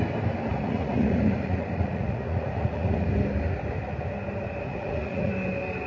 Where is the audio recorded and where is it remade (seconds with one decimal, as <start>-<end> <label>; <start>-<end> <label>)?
0.0-0.5 recorded; 0.5-3.1 remade; 3.1-4.7 recorded; 4.7-5.3 remade; 5.3-5.9 recorded